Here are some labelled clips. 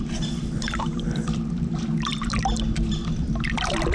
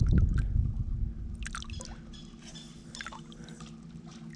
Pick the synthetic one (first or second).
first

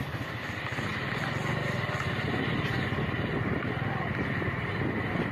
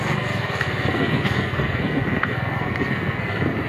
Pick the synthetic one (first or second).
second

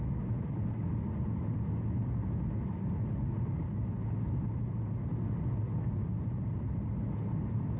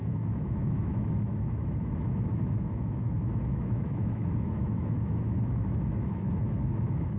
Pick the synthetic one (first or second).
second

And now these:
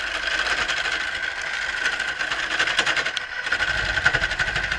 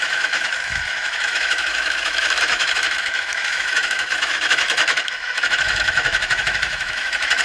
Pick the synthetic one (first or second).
second